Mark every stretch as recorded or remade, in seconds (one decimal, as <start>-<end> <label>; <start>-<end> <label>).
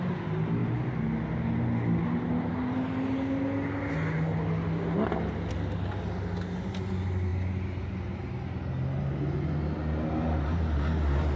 0.0-11.4 recorded